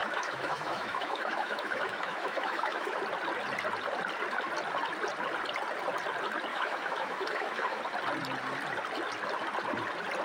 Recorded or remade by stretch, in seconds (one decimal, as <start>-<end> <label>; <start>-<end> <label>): 0.0-3.0 remade; 3.0-6.5 recorded; 6.5-7.8 remade; 7.8-10.2 recorded